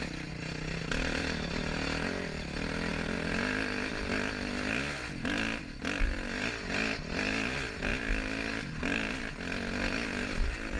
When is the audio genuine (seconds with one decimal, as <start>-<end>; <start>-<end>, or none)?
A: 0.0-10.8